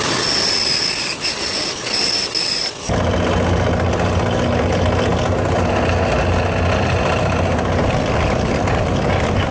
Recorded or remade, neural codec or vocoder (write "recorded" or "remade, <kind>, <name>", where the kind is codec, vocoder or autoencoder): recorded